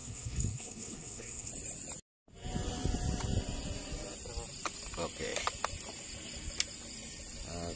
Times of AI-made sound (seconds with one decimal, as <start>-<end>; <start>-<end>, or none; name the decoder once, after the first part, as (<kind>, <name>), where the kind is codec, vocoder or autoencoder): 0.0-1.5 (codec, SNAC)